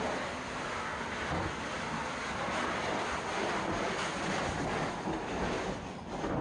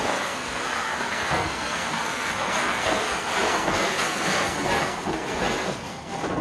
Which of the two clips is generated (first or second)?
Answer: second